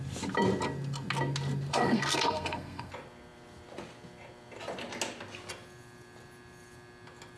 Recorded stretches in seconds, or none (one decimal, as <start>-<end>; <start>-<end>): 0.0-1.7; 2.9-7.4